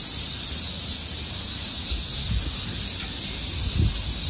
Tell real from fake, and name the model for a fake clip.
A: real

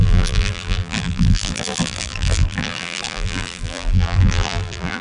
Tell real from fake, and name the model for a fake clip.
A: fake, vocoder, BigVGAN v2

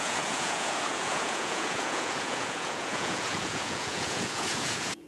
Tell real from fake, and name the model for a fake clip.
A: fake, vocoder, Vocos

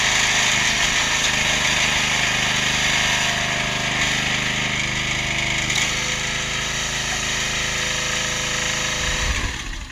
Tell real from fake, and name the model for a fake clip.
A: real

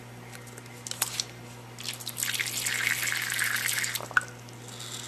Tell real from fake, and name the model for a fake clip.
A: real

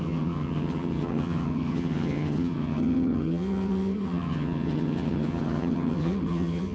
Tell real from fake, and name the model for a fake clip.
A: fake, vocoder, HiFi-GAN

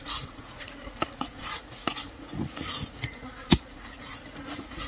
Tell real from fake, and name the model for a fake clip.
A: fake, vocoder, Vocos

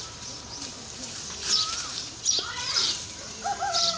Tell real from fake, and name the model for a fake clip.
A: fake, vocoder, BigVGAN v2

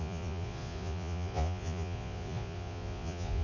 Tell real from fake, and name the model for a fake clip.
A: fake, vocoder, Vocos